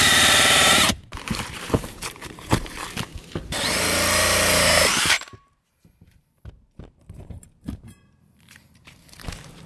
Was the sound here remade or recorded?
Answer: remade